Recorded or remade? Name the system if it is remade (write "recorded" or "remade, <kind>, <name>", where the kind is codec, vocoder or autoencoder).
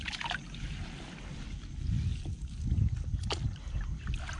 recorded